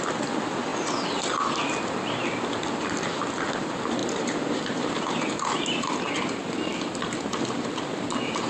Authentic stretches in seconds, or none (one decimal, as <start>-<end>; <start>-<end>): 0.0-4.0; 6.0-8.5